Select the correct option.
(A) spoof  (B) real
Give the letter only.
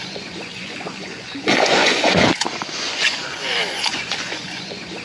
A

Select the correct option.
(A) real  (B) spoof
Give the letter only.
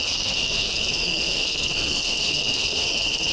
B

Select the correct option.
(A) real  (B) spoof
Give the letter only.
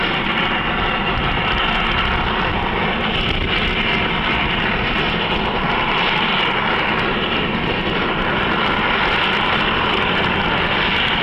A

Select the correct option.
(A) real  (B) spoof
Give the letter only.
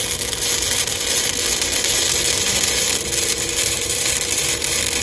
A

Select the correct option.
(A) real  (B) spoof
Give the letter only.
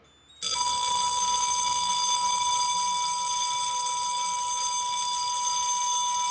A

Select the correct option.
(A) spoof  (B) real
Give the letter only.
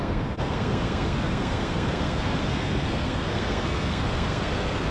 A